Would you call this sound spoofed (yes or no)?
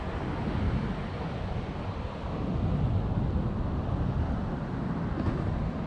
no